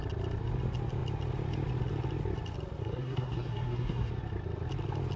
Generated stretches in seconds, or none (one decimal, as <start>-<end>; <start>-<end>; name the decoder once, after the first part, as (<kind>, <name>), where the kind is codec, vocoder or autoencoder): 2.8-4.1 (codec, SNAC)